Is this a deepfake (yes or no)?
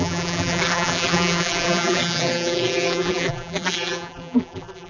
yes